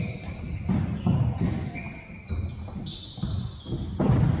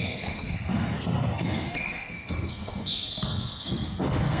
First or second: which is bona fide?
first